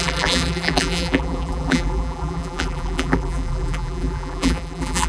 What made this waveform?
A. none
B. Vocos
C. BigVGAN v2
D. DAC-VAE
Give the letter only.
C